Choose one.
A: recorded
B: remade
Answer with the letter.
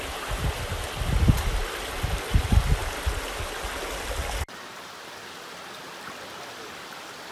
A